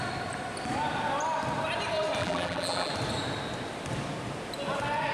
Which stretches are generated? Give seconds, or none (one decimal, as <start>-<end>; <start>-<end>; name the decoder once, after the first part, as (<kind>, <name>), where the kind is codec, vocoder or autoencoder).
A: 2.2-2.9 (vocoder, BigVGAN v2)